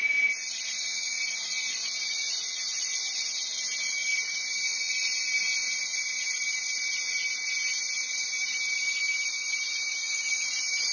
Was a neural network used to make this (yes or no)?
yes